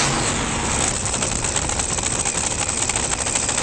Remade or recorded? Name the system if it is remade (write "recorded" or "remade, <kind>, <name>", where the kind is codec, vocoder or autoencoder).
recorded